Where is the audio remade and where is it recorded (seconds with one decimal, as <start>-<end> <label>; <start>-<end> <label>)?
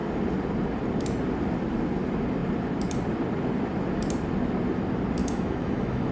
0.0-5.2 recorded; 5.2-6.1 remade